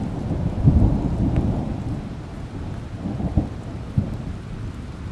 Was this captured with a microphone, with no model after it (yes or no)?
yes